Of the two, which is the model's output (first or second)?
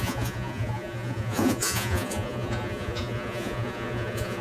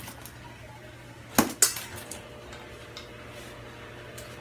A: first